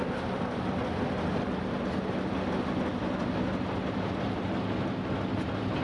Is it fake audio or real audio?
real